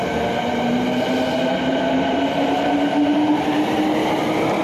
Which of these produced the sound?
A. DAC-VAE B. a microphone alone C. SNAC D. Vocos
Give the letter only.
B